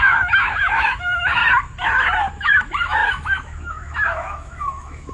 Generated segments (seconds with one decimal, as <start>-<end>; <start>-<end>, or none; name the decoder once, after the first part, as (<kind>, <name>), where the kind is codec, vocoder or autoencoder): 0.0-1.4 (autoencoder, DAC-VAE); 2.3-5.1